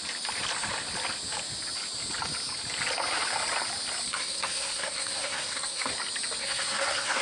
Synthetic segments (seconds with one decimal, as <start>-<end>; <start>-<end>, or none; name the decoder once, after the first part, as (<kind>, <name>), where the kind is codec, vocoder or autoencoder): 4.1-5.9 (codec, SNAC); 6.4-7.2